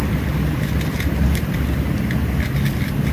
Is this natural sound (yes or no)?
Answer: yes